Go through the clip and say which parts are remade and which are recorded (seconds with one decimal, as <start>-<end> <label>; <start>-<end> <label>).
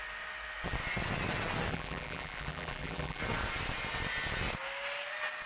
0.0-1.7 recorded; 1.7-3.2 remade; 3.2-5.5 recorded